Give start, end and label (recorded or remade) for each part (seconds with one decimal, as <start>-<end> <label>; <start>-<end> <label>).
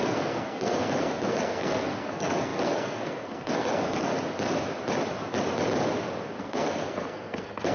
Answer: 0.0-4.1 remade; 4.1-6.4 recorded; 6.4-7.7 remade